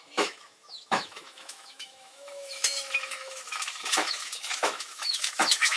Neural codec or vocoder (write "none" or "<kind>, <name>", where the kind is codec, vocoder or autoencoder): autoencoder, DAC-VAE